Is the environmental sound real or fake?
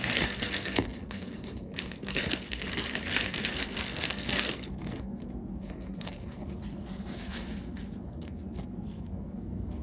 fake